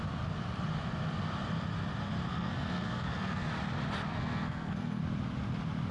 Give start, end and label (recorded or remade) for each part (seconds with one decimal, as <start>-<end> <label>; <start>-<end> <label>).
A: 0.0-2.3 recorded; 2.3-3.5 remade; 3.5-4.1 recorded; 4.1-5.0 remade; 5.0-5.9 recorded